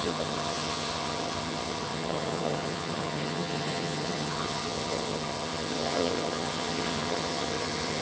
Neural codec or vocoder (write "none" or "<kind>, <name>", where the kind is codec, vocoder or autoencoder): vocoder, HiFi-GAN